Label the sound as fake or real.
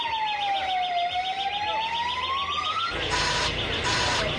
real